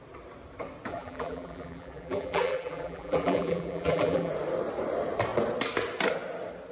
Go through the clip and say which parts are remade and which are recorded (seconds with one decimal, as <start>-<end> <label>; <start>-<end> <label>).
0.0-0.9 recorded; 0.9-4.3 remade; 4.3-6.7 recorded

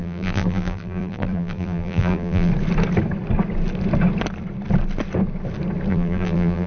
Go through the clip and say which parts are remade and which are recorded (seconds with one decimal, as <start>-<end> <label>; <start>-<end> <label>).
0.0-2.5 remade; 2.5-5.9 recorded; 5.9-6.7 remade

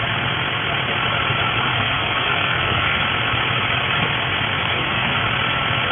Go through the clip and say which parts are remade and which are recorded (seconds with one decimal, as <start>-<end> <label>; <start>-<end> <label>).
0.0-1.7 recorded; 1.7-3.0 remade; 3.0-4.5 recorded; 4.5-5.2 remade; 5.2-5.9 recorded